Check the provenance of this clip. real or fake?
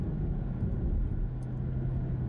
real